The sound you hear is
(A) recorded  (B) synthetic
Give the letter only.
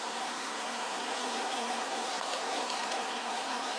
B